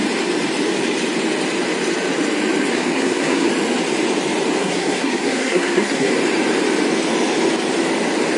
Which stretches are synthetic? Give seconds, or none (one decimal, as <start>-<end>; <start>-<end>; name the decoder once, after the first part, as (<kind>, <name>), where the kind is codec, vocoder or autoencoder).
2.7-3.5 (codec, SNAC); 4.6-6.1